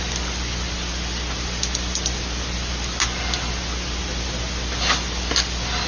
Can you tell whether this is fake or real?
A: real